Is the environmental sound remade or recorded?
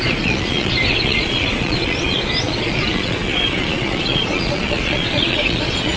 remade